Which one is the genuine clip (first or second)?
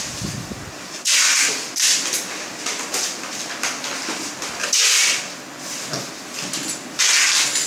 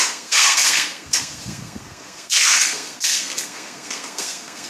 first